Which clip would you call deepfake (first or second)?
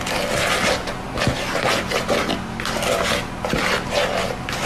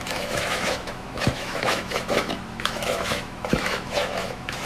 second